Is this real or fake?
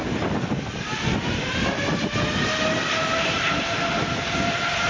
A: real